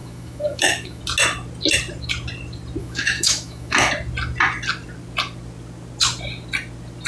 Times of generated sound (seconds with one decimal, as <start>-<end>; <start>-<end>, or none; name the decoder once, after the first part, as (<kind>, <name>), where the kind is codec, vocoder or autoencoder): 0.0-1.0 (autoencoder, DAC-VAE); 2.8-3.9